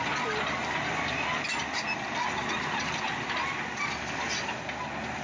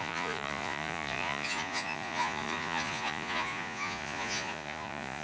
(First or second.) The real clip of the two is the first